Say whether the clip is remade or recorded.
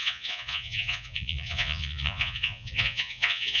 remade